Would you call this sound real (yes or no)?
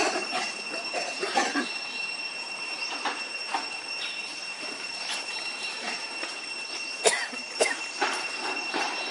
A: no